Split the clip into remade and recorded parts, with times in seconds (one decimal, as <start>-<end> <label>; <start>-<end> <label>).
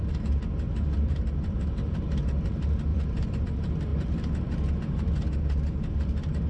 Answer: 0.0-2.9 recorded; 2.9-3.4 remade; 3.4-3.9 recorded; 3.9-4.7 remade; 4.7-6.5 recorded